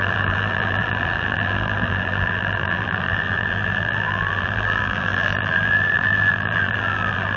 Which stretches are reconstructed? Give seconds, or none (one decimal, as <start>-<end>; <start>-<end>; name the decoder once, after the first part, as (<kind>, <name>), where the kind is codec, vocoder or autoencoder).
0.0-7.4 (vocoder, BigVGAN v2)